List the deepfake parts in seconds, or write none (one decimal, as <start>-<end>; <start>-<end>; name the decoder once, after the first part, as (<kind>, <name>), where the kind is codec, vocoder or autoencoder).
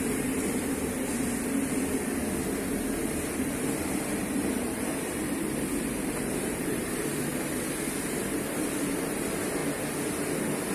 0.0-1.1 (vocoder, BigVGAN v2); 3.1-7.3; 8.1-9.6